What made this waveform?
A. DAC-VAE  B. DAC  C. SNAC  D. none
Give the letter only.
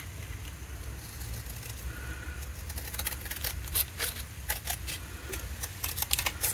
D